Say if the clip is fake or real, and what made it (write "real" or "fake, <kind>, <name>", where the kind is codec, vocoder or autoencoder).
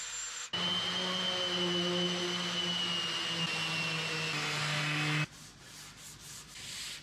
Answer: real